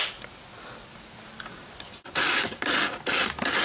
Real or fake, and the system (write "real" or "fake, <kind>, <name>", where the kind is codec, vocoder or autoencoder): real